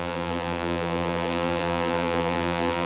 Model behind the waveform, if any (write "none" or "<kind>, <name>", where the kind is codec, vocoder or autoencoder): vocoder, BigVGAN v2